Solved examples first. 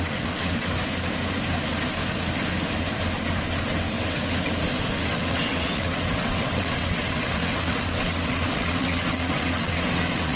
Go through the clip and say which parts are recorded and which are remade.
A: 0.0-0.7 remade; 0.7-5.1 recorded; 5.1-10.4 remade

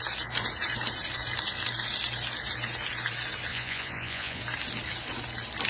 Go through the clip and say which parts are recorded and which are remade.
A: 0.0-3.5 recorded; 3.5-4.4 remade; 4.4-5.7 recorded

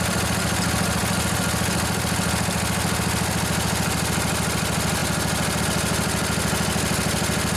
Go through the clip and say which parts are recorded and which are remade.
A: 0.0-7.6 recorded

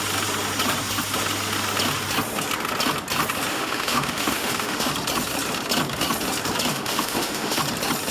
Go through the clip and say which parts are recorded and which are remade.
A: 0.0-3.5 recorded; 3.5-4.9 remade; 4.9-6.7 recorded; 6.7-7.6 remade; 7.6-8.1 recorded

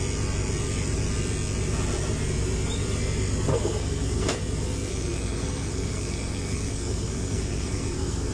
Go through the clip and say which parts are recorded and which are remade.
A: 0.0-3.5 recorded; 3.5-4.4 remade; 4.4-4.9 recorded; 4.9-8.3 remade